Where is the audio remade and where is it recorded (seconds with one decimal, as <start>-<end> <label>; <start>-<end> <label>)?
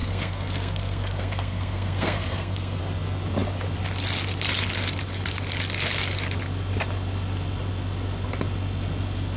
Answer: 0.0-2.8 remade; 2.8-9.4 recorded